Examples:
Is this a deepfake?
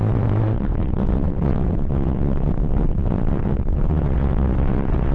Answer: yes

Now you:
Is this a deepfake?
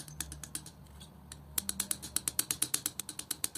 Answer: no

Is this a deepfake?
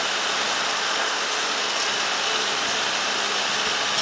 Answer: no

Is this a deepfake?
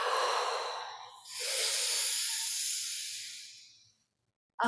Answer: no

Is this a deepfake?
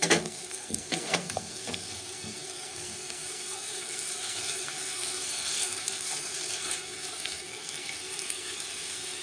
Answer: yes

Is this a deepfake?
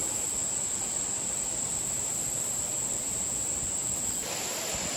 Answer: no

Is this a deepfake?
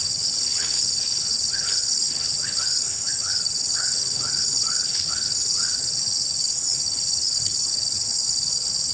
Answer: yes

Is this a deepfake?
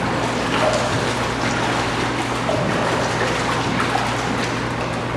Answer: no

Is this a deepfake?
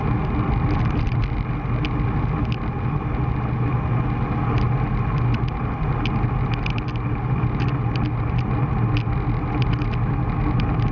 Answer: no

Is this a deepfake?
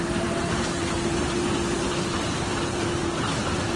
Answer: yes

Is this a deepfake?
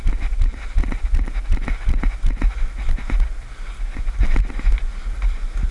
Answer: no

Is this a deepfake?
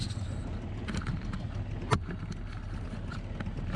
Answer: no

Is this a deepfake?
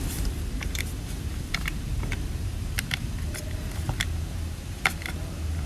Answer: yes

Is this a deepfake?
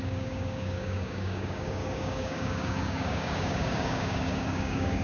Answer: yes